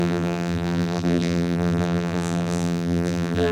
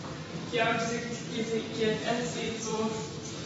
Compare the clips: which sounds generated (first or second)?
first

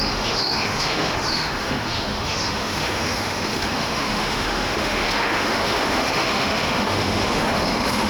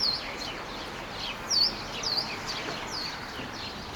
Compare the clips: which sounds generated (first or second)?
first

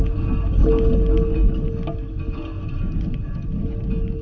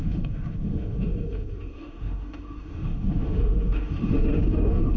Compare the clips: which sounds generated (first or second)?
second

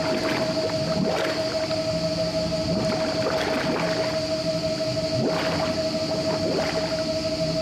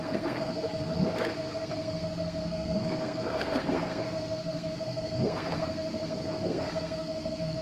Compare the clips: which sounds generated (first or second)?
second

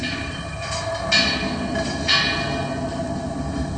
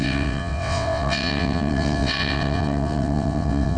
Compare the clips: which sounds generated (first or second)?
second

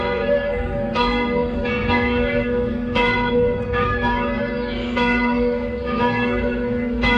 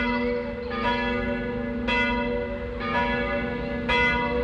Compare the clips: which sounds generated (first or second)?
first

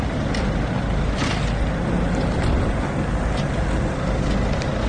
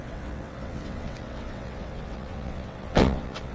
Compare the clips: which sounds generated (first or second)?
second